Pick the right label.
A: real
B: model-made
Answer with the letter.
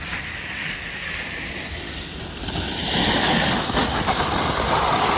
A